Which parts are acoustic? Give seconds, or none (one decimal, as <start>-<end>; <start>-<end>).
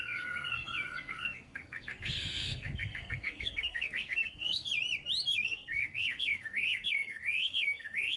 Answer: 4.7-5.3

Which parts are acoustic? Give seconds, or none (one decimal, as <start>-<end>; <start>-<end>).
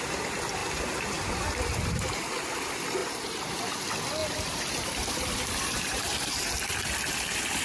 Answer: 0.0-0.6; 2.0-3.0; 3.5-4.2; 6.4-7.6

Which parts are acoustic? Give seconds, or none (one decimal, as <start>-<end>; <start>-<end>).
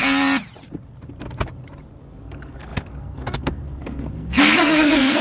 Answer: 0.0-2.0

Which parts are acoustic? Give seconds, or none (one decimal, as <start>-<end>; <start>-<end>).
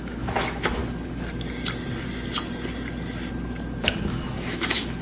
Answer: 0.8-3.8